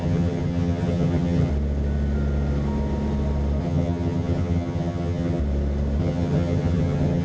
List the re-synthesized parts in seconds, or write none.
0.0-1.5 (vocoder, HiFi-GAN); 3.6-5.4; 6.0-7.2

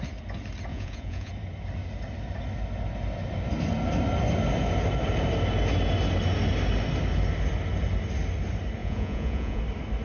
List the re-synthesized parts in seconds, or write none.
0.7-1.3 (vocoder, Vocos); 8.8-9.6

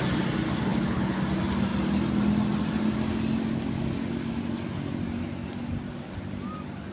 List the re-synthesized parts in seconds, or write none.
0.7-1.2 (codec, HILCodec)

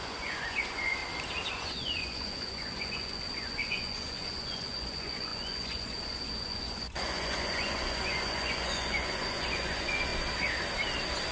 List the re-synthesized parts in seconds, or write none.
0.0-1.0 (vocoder, Vocos); 1.5-10.1

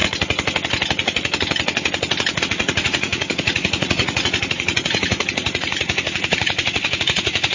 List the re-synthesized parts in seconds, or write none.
2.4-7.5 (vocoder, Vocos)

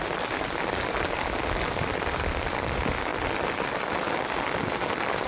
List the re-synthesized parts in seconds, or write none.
none

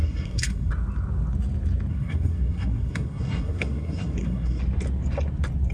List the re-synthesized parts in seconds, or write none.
0.0-0.7 (codec, SNAC); 1.9-4.6